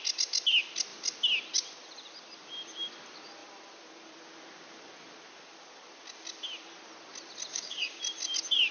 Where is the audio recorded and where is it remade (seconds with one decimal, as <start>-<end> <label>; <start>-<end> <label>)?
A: 0.0-7.5 recorded; 7.5-8.0 remade; 8.0-8.7 recorded